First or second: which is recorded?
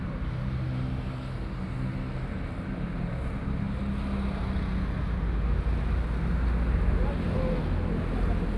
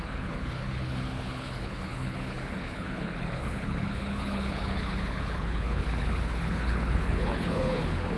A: first